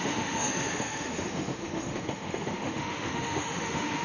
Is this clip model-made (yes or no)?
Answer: yes